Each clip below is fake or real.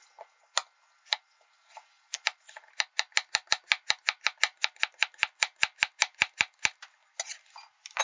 real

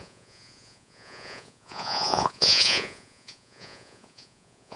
fake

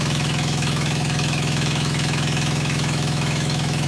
fake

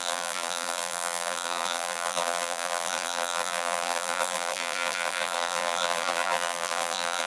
fake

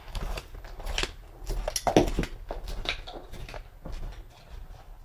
real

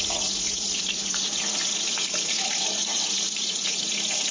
fake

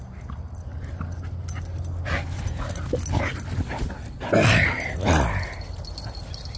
real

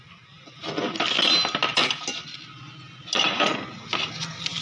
real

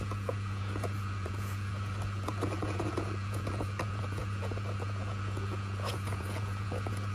fake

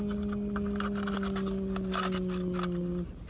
real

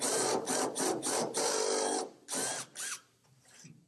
real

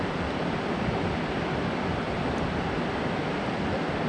real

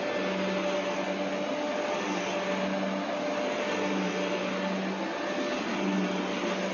real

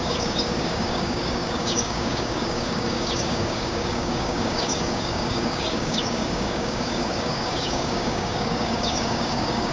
fake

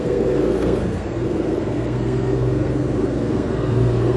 fake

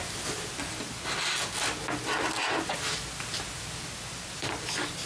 real